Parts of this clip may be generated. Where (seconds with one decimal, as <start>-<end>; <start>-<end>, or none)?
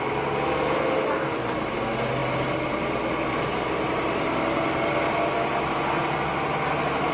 none